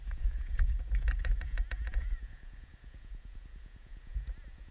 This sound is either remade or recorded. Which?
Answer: remade